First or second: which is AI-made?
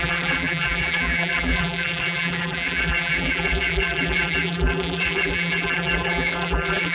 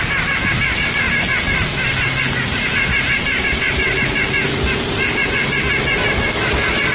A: first